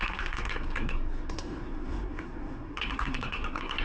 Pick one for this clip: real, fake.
fake